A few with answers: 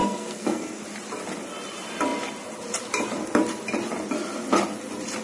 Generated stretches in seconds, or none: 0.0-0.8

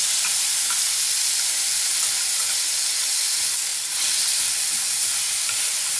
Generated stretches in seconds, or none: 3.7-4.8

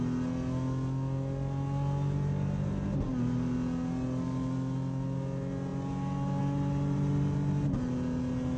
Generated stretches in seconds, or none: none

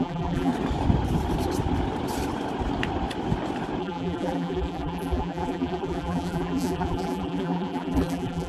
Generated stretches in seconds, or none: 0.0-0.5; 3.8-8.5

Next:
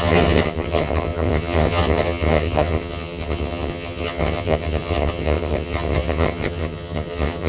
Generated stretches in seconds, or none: 0.0-7.5

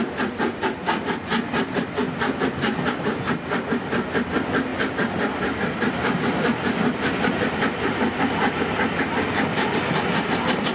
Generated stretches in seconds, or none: none

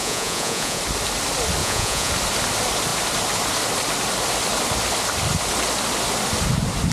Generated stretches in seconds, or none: 0.0-0.8; 1.6-2.1